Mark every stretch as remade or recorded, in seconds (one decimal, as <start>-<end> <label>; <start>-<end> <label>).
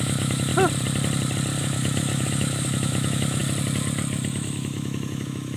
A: 0.0-0.5 remade; 0.5-1.6 recorded; 1.6-3.4 remade; 3.4-4.3 recorded; 4.3-5.6 remade